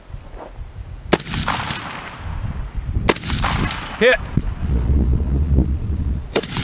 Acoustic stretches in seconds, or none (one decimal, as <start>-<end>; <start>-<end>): 0.0-4.6

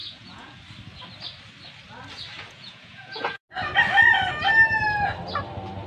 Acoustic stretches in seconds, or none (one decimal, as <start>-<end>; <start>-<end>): 0.6-2.3; 3.4-5.9

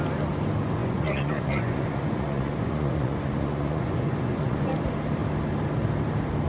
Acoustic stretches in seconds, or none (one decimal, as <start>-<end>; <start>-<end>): 0.0-0.8; 4.7-6.5

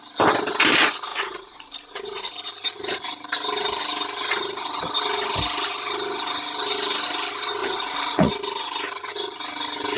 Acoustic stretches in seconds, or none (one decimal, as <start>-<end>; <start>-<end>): 0.0-1.1; 2.3-7.6; 8.3-10.0